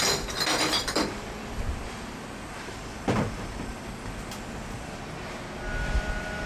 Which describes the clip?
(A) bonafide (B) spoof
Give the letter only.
A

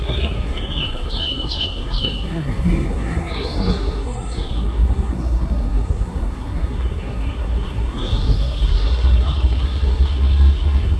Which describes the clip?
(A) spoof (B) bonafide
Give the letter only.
A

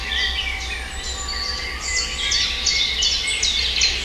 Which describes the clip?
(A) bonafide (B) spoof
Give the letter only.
A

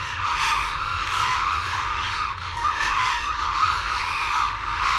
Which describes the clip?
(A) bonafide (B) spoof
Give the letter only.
B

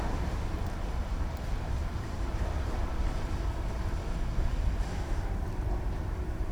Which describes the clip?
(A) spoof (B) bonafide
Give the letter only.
A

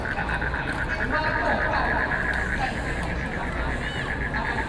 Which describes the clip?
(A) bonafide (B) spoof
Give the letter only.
A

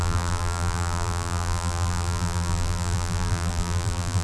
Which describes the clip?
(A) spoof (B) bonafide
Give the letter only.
A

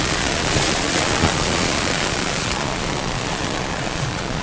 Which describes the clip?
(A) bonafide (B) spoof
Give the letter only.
B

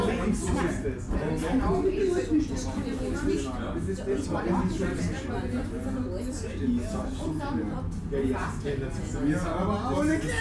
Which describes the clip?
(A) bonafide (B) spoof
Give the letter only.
A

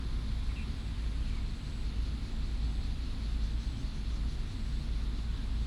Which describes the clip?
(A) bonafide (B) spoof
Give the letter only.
A